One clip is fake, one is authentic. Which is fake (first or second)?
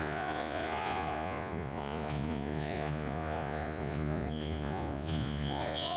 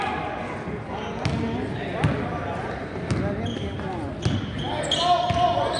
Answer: first